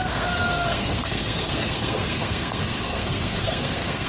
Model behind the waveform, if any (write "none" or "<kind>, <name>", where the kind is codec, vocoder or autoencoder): codec, SNAC